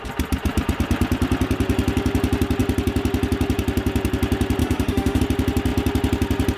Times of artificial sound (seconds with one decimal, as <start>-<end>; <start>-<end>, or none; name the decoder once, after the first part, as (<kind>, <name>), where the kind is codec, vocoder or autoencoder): 4.6-5.2 (autoencoder, DAC-VAE)